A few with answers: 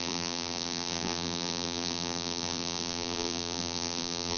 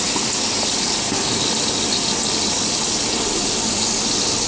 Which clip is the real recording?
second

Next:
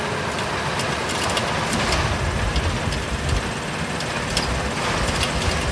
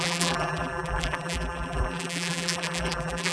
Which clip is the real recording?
first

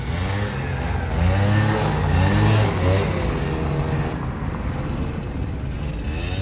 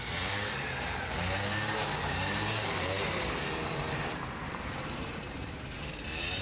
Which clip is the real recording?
first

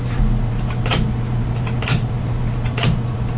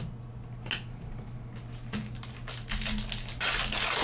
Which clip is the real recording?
second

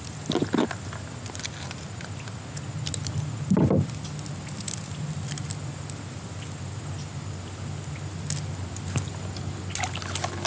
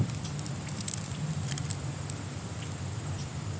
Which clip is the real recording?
first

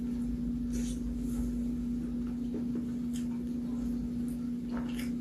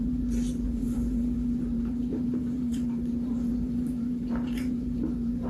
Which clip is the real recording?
first